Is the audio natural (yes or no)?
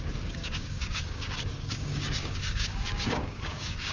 no